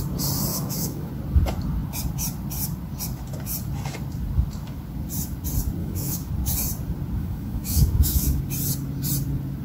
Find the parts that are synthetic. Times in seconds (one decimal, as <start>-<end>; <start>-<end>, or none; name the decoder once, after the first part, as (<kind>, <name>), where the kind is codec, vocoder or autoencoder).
0.5-1.1 (autoencoder, DAC-VAE); 5.8-6.3; 7.2-8.4